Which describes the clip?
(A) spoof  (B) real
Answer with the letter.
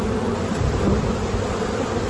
B